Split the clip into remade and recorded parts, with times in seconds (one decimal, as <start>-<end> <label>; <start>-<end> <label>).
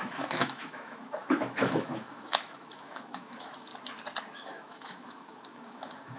0.0-3.7 remade; 3.7-4.3 recorded; 4.3-6.2 remade